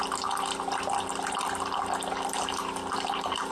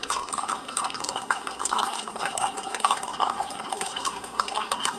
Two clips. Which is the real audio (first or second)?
first